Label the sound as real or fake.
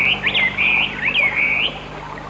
real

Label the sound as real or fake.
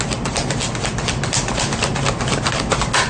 real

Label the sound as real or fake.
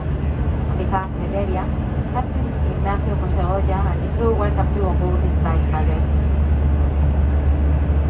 real